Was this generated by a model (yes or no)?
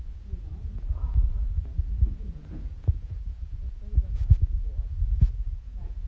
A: yes